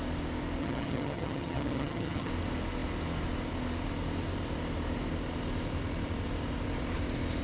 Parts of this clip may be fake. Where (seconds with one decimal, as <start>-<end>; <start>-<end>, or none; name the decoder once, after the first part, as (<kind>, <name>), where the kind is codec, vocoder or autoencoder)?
0.6-2.3 (vocoder, HiFi-GAN)